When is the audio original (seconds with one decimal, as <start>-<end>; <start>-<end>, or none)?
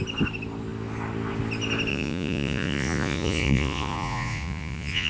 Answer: 0.0-1.9